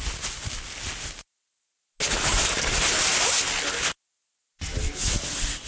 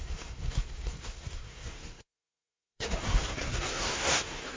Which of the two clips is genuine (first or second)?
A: first